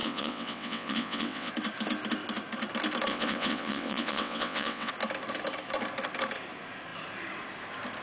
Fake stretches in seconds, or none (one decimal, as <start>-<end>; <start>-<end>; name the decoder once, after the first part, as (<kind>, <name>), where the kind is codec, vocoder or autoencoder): 0.0-1.5 (vocoder, WaveNeXt); 3.1-4.9